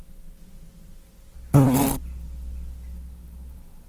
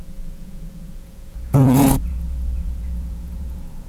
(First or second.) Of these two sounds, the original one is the first